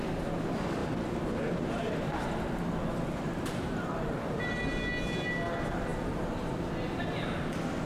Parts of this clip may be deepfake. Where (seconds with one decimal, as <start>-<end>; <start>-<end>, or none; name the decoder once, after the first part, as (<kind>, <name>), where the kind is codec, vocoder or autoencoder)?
0.8-4.6 (vocoder, BigVGAN v2); 5.9-6.5